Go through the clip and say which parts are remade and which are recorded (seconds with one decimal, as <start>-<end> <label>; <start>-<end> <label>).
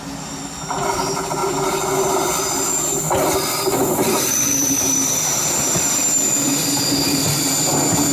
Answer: 0.0-1.4 recorded; 1.4-2.4 remade; 2.4-3.8 recorded; 3.8-4.9 remade; 4.9-8.1 recorded